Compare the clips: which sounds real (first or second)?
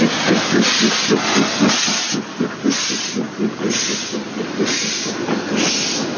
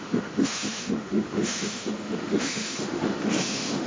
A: first